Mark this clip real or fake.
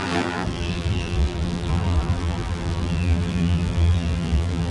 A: fake